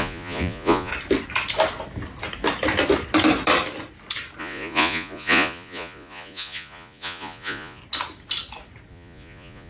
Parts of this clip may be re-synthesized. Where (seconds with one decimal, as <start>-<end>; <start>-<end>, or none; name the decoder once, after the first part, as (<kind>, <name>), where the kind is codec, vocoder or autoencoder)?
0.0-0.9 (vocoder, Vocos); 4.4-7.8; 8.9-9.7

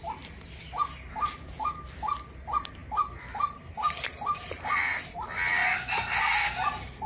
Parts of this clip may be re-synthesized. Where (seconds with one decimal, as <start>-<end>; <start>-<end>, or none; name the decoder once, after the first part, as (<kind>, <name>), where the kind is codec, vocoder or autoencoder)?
none

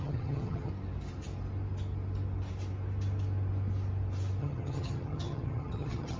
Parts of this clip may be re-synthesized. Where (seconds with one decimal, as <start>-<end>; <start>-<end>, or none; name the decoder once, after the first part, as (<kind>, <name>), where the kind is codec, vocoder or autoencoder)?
0.0-0.7 (vocoder, HiFi-GAN); 4.4-6.2

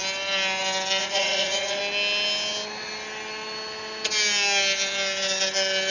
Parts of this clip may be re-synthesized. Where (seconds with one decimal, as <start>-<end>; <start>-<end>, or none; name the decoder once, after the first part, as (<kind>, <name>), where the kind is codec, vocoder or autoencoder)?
1.0-1.8 (vocoder, Vocos)

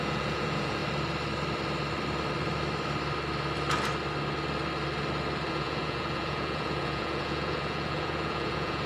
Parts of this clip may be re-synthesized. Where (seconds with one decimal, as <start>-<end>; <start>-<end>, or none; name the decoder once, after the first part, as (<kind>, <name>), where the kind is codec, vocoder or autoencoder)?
0.0-0.8 (vocoder, Vocos); 5.5-8.9